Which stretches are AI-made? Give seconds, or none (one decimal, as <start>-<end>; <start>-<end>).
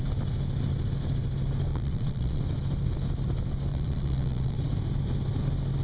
1.7-2.4; 3.7-4.6